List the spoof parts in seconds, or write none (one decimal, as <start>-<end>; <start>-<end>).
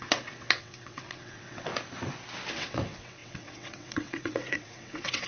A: 0.0-1.7; 2.5-5.3